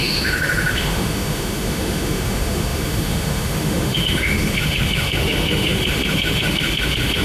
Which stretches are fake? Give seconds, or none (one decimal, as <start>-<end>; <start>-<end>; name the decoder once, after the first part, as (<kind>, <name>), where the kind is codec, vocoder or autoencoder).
0.0-7.2 (autoencoder, DAC-VAE)